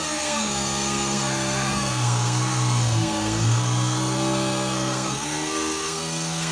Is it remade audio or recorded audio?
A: remade